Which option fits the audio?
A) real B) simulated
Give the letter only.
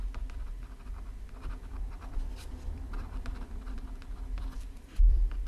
B